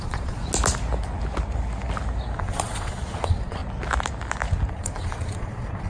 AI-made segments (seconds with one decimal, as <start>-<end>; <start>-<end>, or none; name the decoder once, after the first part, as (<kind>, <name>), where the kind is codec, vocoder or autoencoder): 0.0-0.4 (vocoder, Vocos); 2.4-3.6; 4.7-5.9